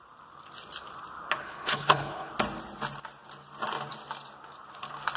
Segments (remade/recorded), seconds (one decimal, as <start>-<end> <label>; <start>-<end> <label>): 0.0-1.4 recorded; 1.4-2.3 remade; 2.3-5.2 recorded